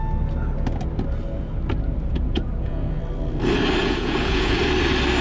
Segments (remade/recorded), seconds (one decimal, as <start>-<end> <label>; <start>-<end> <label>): 0.0-2.1 recorded; 2.1-3.0 remade; 3.0-3.8 recorded; 3.8-4.6 remade; 4.6-5.2 recorded